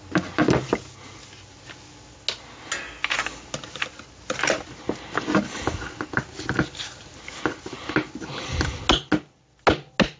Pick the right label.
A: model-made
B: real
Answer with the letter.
B